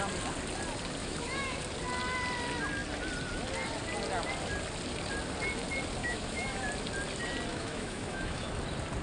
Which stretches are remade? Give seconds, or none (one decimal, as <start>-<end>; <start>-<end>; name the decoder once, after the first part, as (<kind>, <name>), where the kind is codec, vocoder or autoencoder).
1.0-1.6 (autoencoder, DAC-VAE); 6.0-6.6; 7.5-8.5